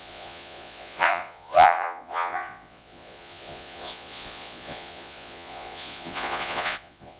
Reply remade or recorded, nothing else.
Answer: remade